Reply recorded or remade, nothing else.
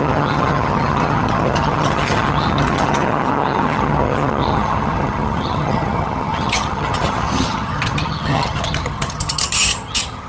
remade